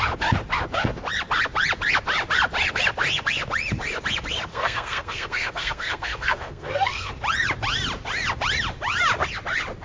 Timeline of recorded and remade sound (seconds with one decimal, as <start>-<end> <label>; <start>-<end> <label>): 0.0-4.5 recorded; 4.5-7.1 remade; 7.1-9.8 recorded